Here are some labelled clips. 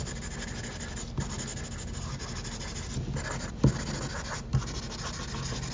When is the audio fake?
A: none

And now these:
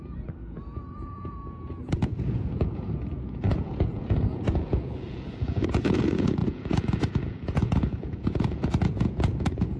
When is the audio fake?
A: 0.0-9.8 (vocoder, Vocos)

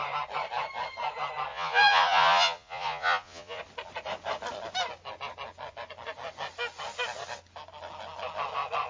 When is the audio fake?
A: 1.5-3.6 (vocoder, Vocos)

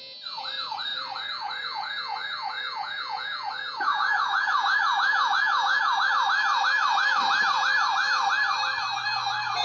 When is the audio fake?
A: 0.9-6.1 (vocoder, Vocos)

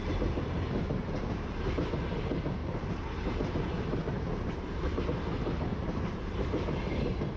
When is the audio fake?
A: 0.0-1.7 (vocoder, BigVGAN v2); 2.6-5.0; 5.7-7.4

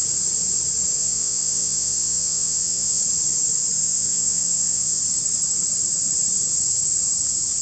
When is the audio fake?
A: 1.0-3.0 (vocoder, Vocos); 3.8-5.0

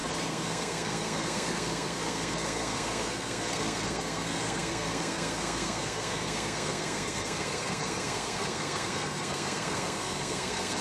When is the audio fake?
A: 0.0-10.8 (codec, SNAC)